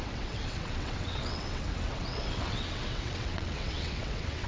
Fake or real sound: fake